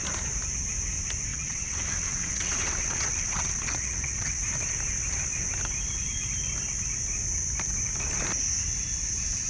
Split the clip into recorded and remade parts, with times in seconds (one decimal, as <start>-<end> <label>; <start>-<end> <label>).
0.0-1.3 recorded; 1.3-4.4 remade; 4.4-9.5 recorded

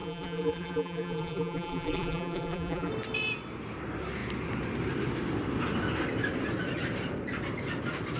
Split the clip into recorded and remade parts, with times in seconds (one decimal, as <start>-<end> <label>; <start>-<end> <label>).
0.0-2.9 remade; 2.9-8.2 recorded